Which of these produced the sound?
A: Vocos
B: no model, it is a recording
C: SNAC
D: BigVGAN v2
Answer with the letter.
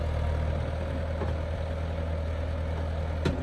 B